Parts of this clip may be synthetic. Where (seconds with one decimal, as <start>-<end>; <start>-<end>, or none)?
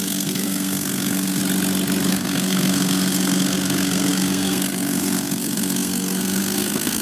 0.0-1.4; 2.1-7.0